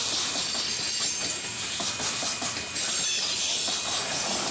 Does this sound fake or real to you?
real